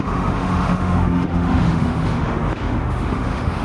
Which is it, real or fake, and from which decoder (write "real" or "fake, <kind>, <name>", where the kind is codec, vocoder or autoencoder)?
fake, autoencoder, DAC-VAE